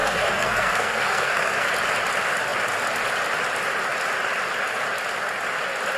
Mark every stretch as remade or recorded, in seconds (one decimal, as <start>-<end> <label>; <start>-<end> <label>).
0.0-1.7 remade; 1.7-6.0 recorded